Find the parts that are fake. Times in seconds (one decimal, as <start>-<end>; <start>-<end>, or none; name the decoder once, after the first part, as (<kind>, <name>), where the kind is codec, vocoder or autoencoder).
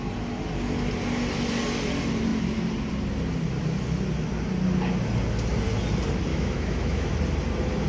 6.3-7.1 (autoencoder, DAC-VAE)